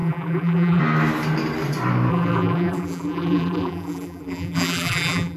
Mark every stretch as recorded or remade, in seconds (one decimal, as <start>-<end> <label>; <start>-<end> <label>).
0.0-0.8 remade; 0.8-2.1 recorded; 2.1-5.4 remade